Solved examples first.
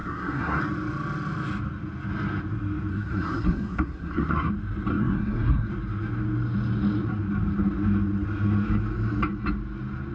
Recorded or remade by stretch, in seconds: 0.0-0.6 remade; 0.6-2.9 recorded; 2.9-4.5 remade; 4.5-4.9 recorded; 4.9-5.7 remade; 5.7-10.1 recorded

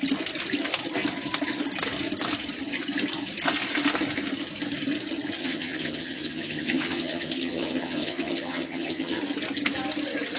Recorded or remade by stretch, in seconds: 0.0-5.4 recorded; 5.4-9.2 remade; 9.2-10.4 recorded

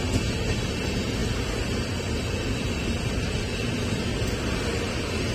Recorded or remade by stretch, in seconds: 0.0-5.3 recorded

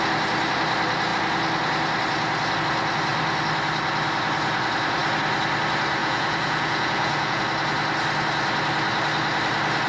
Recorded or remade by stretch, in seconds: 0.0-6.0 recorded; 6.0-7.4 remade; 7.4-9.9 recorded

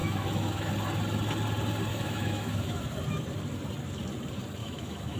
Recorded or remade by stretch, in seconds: 0.0-0.7 remade; 0.7-1.9 recorded; 1.9-2.8 remade; 2.8-4.6 recorded; 4.6-5.2 remade